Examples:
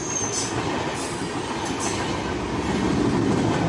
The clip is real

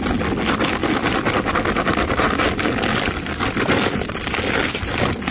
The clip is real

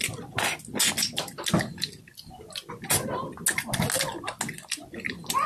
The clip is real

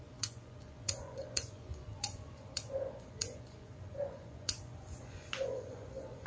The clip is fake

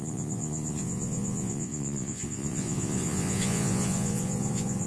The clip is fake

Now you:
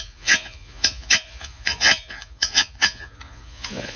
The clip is fake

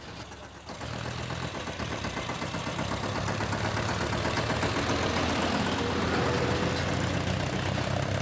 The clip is real